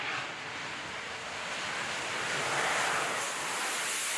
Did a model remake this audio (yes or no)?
no